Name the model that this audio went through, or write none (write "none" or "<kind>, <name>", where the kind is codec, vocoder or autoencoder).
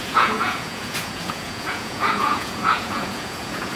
vocoder, Vocos